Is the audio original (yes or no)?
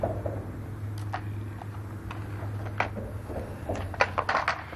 yes